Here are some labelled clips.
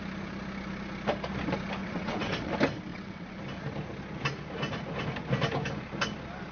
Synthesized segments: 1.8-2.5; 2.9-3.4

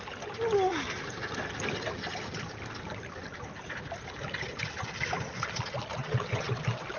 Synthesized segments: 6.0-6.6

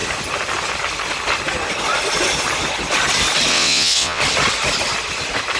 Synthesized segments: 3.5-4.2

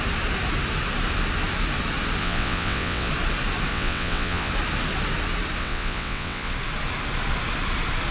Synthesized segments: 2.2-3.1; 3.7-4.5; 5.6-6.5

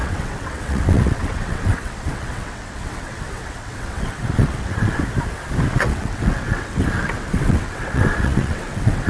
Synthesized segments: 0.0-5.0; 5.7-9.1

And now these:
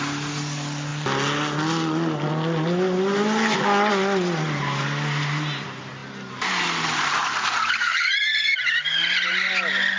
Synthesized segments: none

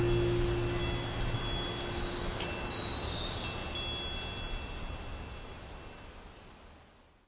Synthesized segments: none